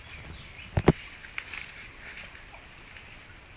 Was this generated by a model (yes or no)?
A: no